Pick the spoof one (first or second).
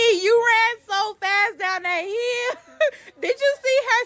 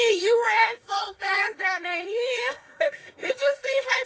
second